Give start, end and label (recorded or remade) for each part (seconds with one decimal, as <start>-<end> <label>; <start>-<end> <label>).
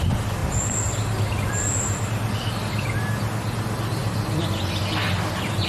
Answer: 0.0-0.4 recorded; 0.4-2.5 remade; 2.5-4.0 recorded; 4.0-4.7 remade; 4.7-5.7 recorded